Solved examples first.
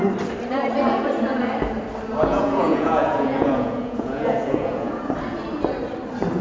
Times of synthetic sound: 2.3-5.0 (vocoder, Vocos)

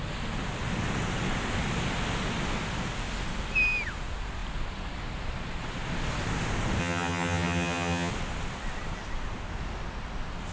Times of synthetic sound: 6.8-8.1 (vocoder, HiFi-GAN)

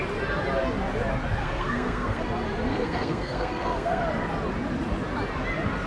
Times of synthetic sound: 1.4-2.2 (codec, SNAC); 2.7-4.0

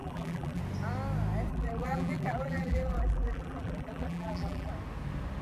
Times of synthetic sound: 0.0-0.6 (vocoder, BigVGAN v2); 1.5-4.7

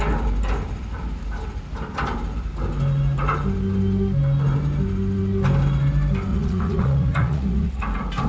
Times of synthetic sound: 6.3-7.8 (vocoder, Vocos)